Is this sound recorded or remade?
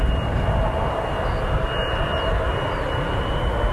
recorded